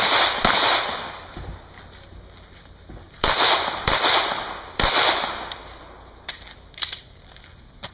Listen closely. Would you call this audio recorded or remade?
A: recorded